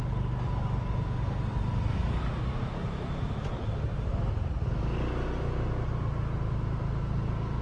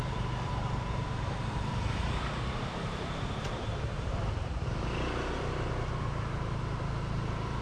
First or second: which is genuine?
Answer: first